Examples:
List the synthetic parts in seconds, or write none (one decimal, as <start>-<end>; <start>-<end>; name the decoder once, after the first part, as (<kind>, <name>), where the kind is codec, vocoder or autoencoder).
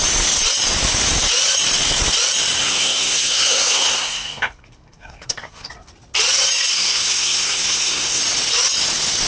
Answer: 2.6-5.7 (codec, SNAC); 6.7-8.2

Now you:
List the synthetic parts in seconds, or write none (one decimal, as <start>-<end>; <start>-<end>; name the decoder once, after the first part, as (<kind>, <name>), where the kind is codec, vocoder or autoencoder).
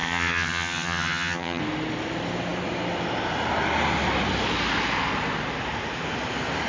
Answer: 0.0-1.6 (vocoder, HiFi-GAN)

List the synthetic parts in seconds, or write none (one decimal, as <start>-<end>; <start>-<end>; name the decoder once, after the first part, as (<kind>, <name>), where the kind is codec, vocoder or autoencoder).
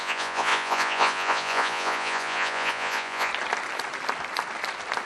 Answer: 0.0-3.3 (vocoder, Vocos)